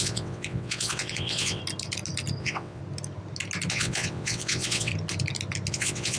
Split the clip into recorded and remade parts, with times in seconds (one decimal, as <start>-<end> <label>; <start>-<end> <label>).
0.0-1.6 remade; 1.6-2.4 recorded; 2.4-2.8 remade; 2.8-3.7 recorded; 3.7-4.9 remade; 4.9-5.7 recorded; 5.7-6.2 remade